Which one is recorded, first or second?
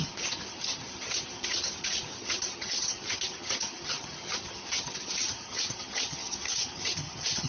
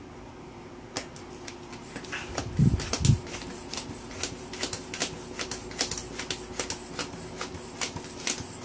second